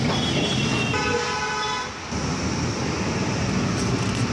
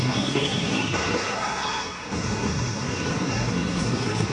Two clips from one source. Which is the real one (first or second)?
first